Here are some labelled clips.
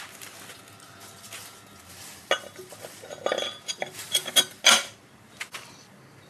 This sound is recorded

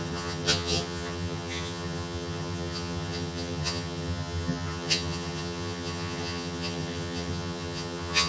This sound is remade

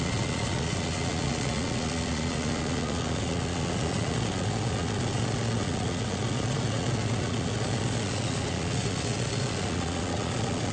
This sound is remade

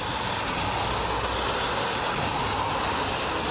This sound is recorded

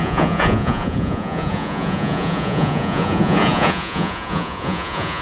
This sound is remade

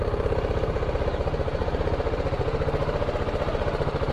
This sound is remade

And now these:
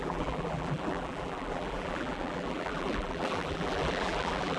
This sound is remade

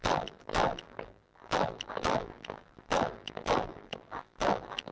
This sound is remade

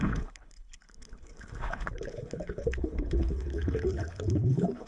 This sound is remade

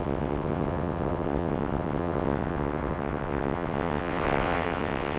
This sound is remade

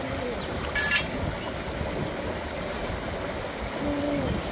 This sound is recorded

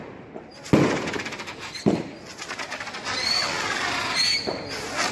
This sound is recorded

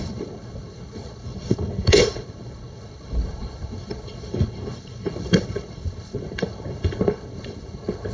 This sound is remade